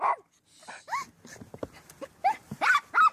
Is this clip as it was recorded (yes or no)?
yes